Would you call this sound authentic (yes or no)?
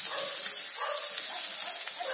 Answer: yes